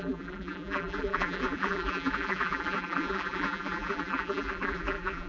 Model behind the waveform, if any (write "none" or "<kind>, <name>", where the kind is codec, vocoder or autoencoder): vocoder, BigVGAN v2